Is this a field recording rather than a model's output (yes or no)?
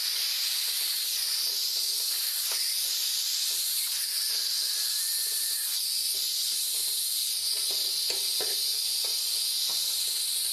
yes